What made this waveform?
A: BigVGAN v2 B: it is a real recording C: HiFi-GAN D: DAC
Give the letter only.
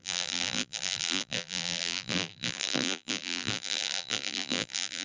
A